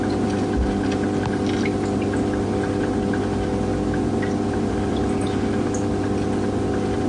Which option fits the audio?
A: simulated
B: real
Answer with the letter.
B